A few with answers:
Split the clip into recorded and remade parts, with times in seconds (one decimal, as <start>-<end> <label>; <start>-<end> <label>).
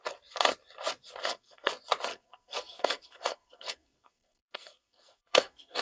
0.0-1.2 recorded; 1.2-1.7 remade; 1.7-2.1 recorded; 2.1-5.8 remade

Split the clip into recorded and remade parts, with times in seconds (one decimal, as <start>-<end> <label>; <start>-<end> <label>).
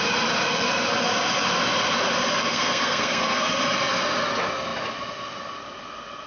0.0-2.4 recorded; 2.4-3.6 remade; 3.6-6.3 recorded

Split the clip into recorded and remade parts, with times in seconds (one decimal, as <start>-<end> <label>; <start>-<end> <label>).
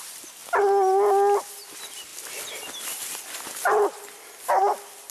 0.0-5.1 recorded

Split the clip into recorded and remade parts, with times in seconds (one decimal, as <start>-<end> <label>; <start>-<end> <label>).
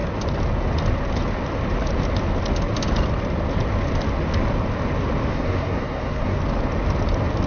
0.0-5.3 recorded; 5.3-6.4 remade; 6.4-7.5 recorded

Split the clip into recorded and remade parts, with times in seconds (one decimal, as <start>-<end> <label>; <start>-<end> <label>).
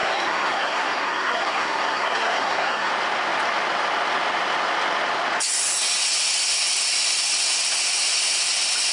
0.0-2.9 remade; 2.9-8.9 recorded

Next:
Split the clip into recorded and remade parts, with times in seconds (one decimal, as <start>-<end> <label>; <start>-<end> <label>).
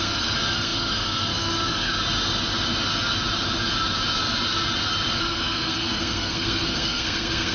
0.0-1.9 remade; 1.9-5.2 recorded; 5.2-7.5 remade